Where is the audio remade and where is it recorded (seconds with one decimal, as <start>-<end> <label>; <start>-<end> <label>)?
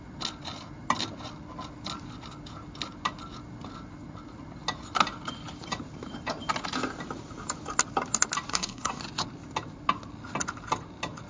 0.0-8.5 recorded; 8.5-9.0 remade; 9.0-11.3 recorded